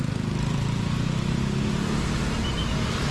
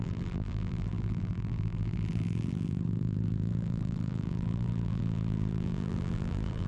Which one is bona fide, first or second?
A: first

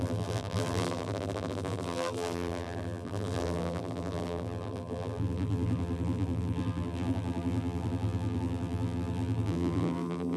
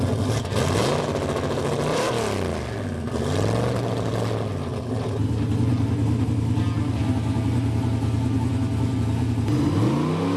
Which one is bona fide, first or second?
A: second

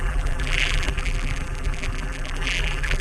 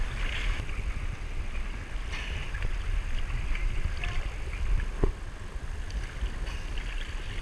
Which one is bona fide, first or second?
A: second